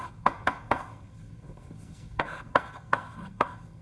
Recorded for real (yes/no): no